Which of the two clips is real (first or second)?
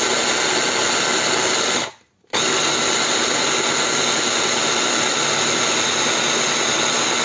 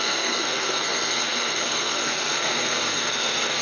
first